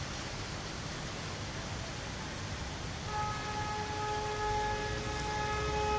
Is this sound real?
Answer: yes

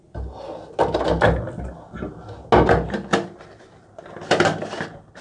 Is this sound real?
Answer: yes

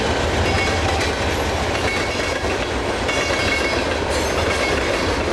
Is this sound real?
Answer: yes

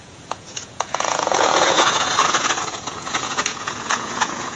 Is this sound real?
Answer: no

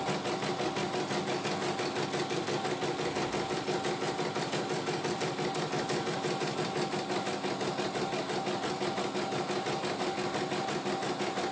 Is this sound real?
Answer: yes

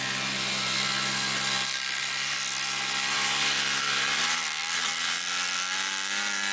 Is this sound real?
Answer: yes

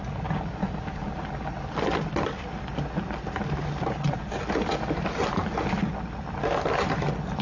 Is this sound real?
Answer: yes